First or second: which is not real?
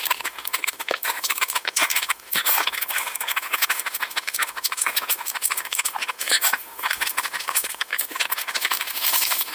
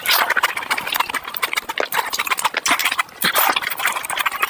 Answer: first